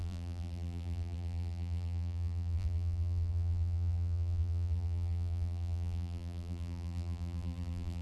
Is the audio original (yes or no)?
no